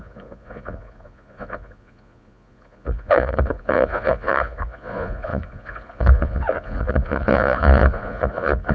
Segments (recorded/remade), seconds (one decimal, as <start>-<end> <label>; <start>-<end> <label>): 0.0-8.7 remade